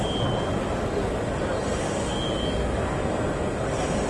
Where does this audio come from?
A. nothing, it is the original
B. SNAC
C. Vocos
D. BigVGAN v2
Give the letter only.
A